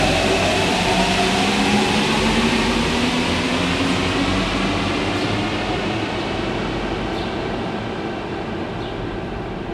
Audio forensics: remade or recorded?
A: recorded